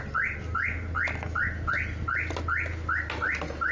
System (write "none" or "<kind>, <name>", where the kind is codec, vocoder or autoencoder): none